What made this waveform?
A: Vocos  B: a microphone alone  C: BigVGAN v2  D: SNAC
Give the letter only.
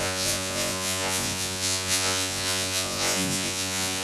A